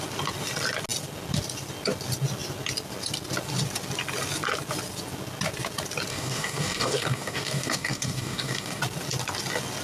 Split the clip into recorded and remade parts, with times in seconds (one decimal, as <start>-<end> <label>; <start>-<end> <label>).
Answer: 0.0-6.1 recorded; 6.1-8.8 remade; 8.8-9.8 recorded